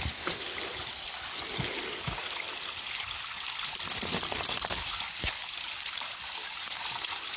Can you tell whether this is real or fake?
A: real